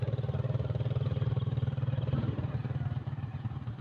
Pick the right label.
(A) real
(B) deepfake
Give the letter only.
B